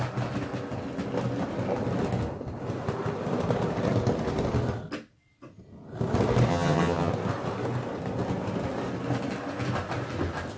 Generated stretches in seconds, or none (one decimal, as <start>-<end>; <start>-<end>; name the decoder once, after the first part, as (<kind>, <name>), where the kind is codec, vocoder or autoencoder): 6.5-7.1 (vocoder, HiFi-GAN)